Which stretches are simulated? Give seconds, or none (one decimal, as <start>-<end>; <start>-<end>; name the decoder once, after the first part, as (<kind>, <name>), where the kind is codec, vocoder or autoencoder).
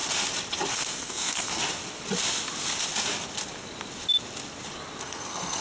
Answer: 0.7-1.6 (codec, SNAC); 5.0-5.6